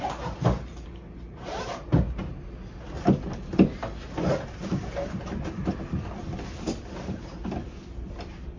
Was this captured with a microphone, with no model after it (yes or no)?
yes